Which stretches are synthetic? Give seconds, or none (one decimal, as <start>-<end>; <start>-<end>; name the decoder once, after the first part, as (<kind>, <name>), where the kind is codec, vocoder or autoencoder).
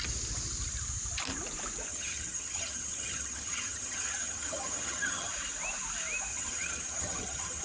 1.9-5.3 (vocoder, HiFi-GAN); 6.3-7.6